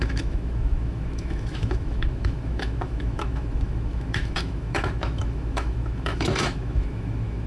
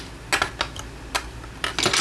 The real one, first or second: second